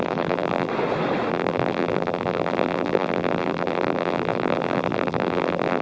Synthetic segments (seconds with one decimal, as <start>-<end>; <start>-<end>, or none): 0.0-0.7; 1.3-5.8